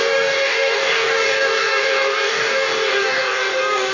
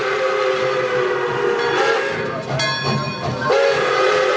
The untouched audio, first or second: second